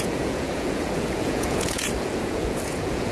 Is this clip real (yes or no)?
no